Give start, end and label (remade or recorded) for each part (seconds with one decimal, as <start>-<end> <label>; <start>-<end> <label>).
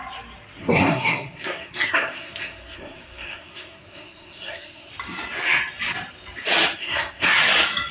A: 0.0-0.6 recorded; 0.6-4.9 remade; 4.9-6.8 recorded; 6.8-7.4 remade; 7.4-7.9 recorded